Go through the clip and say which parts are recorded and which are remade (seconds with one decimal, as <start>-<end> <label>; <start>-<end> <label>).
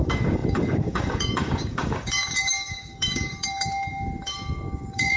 0.0-5.2 remade